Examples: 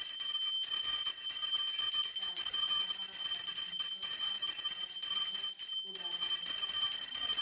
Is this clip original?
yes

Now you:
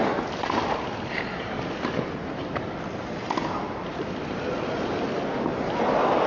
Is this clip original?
yes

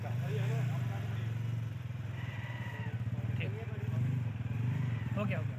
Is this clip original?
yes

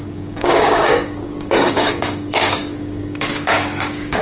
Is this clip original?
no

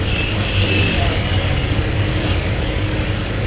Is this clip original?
no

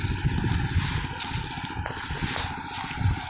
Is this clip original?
yes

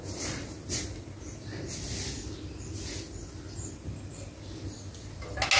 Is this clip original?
yes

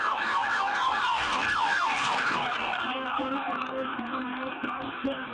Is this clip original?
no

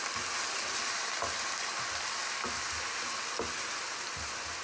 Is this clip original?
yes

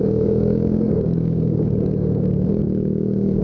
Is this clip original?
no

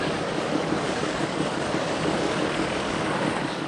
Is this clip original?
no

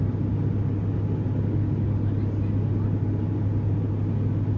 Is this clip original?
yes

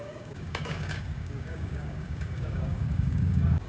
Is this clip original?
no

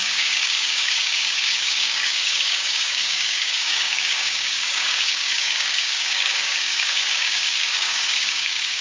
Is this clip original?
no